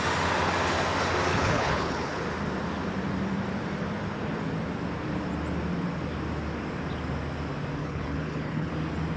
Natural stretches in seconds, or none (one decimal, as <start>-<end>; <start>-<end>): 0.0-1.3; 2.2-7.8; 8.7-9.2